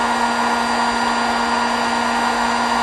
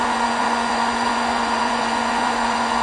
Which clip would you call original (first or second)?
first